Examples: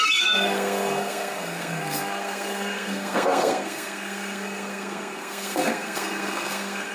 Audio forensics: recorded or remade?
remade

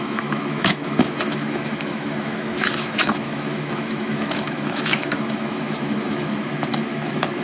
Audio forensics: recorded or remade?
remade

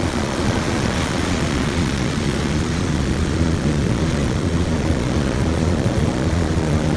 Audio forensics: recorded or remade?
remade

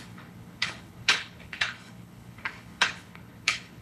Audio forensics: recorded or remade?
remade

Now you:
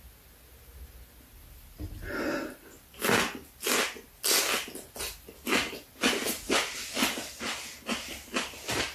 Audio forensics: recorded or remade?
recorded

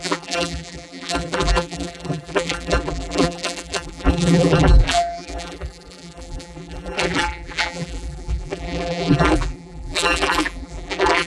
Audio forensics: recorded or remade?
remade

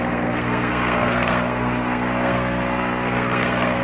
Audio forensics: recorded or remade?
remade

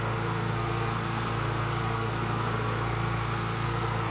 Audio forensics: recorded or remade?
remade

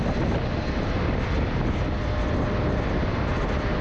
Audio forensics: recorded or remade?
recorded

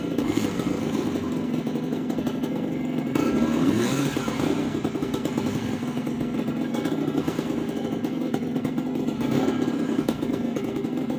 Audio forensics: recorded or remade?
remade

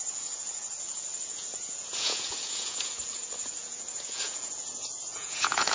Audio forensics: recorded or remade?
remade